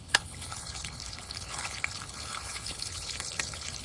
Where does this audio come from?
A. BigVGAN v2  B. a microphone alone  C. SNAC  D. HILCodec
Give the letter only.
D